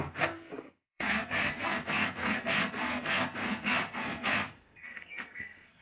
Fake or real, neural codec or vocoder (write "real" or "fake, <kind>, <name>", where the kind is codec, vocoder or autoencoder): fake, codec, SNAC